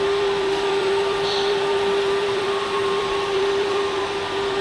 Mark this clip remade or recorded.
remade